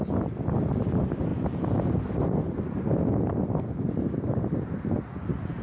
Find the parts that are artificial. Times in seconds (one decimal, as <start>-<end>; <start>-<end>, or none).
1.3-4.7